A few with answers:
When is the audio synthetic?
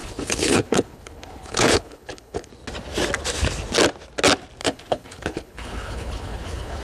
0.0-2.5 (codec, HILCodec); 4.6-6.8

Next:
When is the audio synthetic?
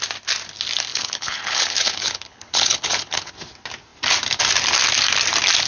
0.9-3.3 (codec, HILCodec)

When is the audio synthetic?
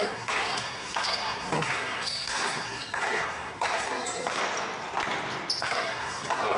0.0-4.4 (codec, SNAC); 5.6-6.6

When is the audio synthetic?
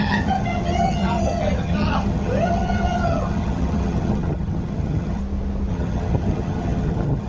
0.0-5.2 (vocoder, HiFi-GAN); 5.7-7.3